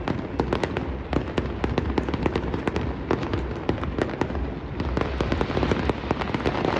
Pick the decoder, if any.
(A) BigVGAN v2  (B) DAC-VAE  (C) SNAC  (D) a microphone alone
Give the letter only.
D